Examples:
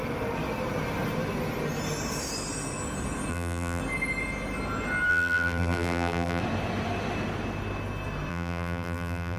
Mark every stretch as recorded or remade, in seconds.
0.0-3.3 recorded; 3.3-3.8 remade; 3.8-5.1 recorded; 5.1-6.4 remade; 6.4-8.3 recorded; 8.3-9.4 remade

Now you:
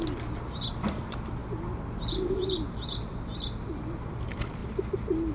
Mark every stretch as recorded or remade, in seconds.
0.0-0.7 recorded; 0.7-1.4 remade; 1.4-3.6 recorded; 3.6-4.6 remade; 4.6-5.3 recorded

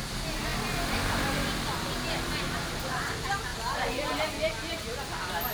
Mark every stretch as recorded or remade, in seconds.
0.0-5.5 recorded

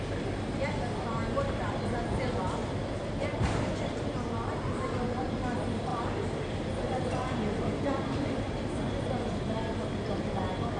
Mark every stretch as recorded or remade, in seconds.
0.0-2.6 recorded; 2.6-4.3 remade; 4.3-5.9 recorded; 5.9-9.1 remade; 9.1-10.8 recorded

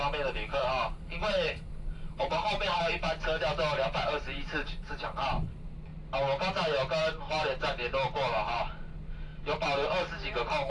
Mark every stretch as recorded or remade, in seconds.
0.0-2.9 remade; 2.9-4.2 recorded; 4.2-5.9 remade; 5.9-7.0 recorded; 7.0-9.3 remade; 9.3-10.7 recorded

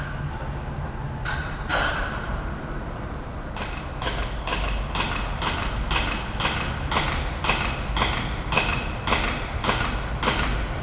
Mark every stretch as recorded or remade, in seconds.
0.0-1.4 recorded; 1.4-3.2 remade; 3.2-10.8 recorded